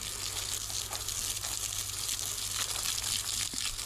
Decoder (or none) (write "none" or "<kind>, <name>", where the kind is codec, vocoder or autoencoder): none